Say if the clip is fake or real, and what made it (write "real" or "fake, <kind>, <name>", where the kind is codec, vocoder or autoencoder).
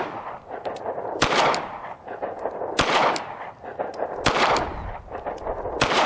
real